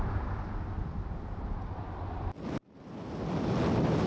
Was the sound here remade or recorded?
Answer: recorded